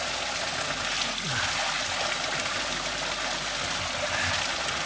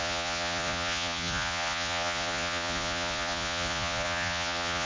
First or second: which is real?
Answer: first